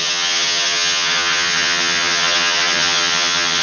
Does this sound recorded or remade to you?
remade